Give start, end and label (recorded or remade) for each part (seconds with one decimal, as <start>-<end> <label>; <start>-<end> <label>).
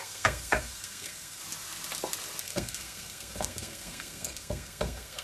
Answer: 0.0-1.4 remade; 1.4-2.4 recorded; 2.4-5.2 remade